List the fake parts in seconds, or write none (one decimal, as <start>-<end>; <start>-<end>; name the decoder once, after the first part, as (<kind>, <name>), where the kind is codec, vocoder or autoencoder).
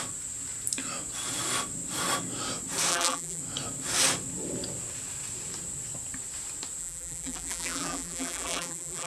2.9-3.4 (vocoder, BigVGAN v2); 6.8-9.1